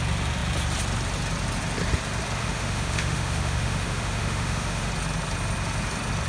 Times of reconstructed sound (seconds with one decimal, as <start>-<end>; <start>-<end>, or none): 2.4-4.9